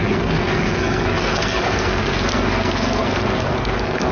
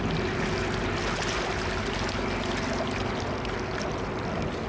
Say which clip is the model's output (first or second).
first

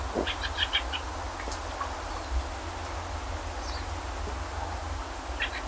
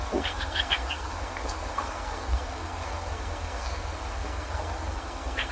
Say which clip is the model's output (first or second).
second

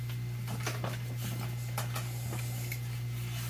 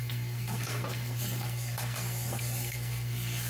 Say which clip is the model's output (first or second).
second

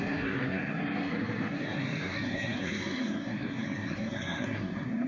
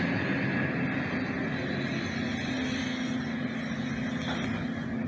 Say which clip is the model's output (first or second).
first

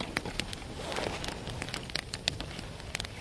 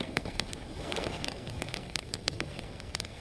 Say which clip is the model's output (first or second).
second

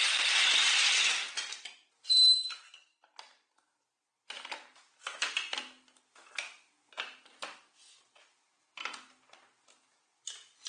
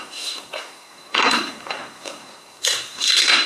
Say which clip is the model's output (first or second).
second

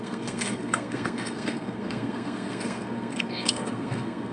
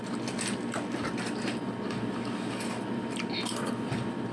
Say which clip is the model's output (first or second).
first